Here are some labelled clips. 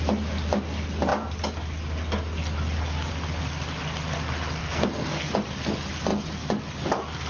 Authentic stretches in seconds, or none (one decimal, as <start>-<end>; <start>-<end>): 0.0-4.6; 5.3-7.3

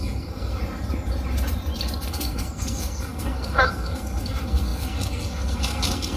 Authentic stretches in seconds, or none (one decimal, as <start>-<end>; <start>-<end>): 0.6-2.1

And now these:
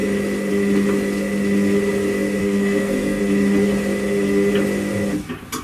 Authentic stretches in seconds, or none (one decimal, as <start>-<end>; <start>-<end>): 0.0-2.4; 3.2-5.6

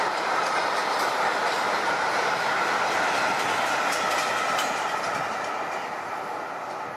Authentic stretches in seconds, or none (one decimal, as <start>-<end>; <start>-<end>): 0.0-7.0

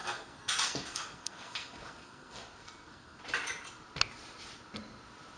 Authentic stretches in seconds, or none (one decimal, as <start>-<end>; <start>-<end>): 3.2-5.4

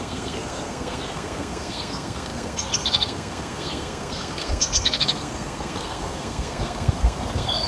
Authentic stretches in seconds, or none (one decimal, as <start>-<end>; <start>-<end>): none

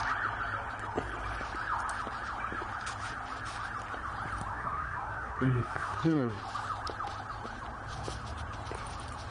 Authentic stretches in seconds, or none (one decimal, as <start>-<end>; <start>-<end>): 0.0-4.5; 6.4-9.3